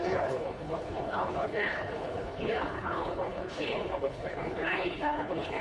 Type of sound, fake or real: fake